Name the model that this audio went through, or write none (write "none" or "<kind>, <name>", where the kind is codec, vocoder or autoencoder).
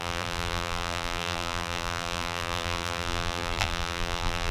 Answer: vocoder, BigVGAN v2